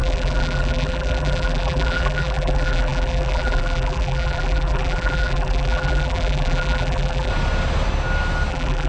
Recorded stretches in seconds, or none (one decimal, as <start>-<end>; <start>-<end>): 7.3-8.5